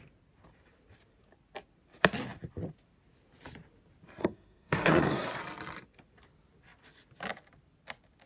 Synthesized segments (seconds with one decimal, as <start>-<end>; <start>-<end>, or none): 4.2-5.4